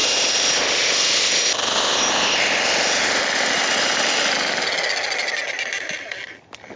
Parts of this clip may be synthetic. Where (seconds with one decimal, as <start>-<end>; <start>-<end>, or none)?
none